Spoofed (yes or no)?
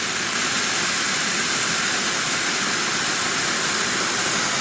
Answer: no